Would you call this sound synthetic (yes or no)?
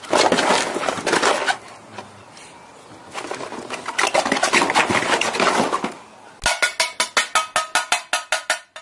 no